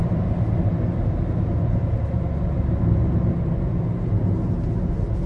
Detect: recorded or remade recorded